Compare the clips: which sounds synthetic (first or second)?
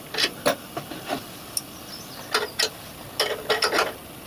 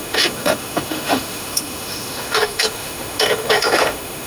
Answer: second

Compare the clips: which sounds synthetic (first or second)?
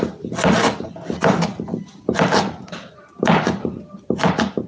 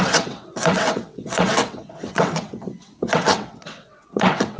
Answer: second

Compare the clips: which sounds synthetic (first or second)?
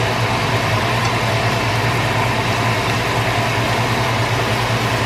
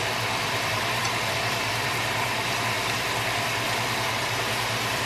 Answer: second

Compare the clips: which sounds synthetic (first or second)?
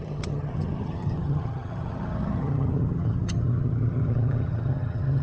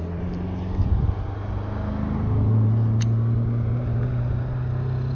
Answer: first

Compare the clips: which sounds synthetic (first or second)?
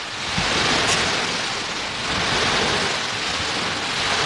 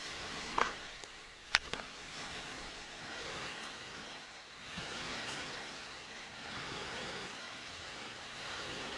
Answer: second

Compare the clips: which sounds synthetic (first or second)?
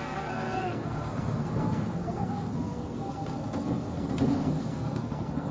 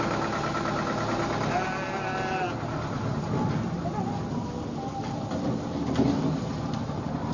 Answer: first